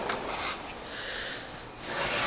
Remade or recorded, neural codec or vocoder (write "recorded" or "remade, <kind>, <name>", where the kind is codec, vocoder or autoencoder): recorded